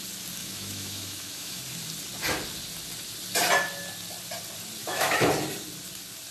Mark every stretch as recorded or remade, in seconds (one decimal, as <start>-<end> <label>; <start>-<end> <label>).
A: 0.0-0.4 recorded; 0.4-1.6 remade; 1.6-4.8 recorded; 4.8-5.3 remade; 5.3-6.3 recorded